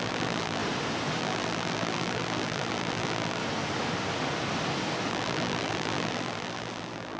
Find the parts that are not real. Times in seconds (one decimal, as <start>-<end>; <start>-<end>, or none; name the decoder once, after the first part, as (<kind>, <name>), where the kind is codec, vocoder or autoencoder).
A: 0.0-0.6 (vocoder, BigVGAN v2); 1.2-3.4; 5.1-7.2